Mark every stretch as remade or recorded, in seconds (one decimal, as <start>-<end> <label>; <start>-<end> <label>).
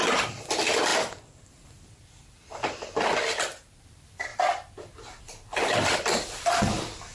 0.0-0.9 remade; 0.9-1.5 recorded; 1.5-4.3 remade; 4.3-5.2 recorded; 5.2-7.1 remade